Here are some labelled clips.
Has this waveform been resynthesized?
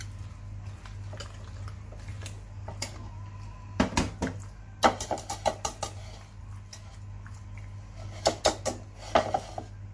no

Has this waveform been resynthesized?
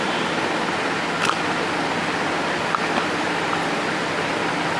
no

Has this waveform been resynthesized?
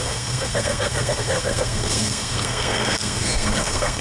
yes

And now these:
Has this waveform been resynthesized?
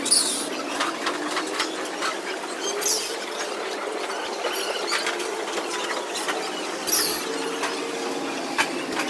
no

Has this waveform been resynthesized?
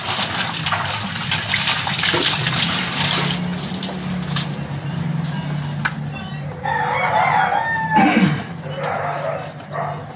no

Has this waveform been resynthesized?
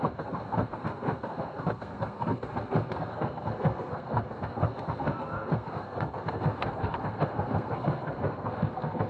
yes